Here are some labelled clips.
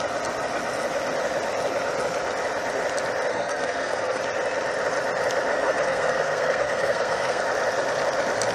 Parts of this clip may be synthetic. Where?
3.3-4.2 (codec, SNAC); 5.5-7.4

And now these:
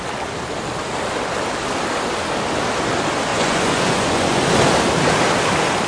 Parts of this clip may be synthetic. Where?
3.3-4.4 (vocoder, Vocos)

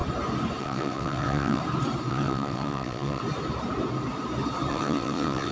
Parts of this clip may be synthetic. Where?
0.6-1.6 (vocoder, WaveNeXt); 2.1-3.2; 4.7-5.5

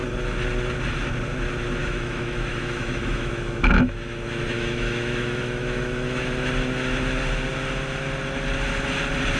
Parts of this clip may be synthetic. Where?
1.8-6.5 (autoencoder, DAC-VAE)

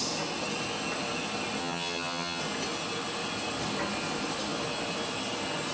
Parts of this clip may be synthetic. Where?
1.6-2.4 (vocoder, HiFi-GAN)